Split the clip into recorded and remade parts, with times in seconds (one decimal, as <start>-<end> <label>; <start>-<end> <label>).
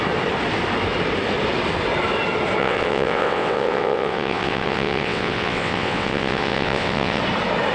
0.0-2.6 recorded; 2.6-7.2 remade; 7.2-7.7 recorded